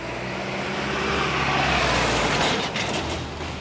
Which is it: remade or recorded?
recorded